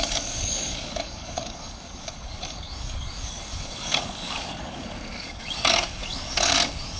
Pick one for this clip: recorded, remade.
remade